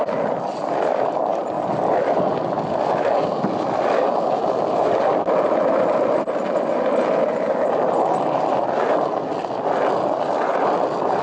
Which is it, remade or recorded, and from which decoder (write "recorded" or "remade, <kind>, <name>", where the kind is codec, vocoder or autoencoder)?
recorded